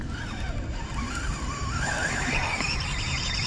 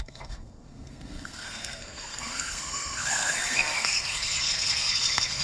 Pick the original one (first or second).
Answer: first